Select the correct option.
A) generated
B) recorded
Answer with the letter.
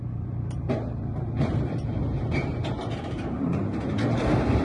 A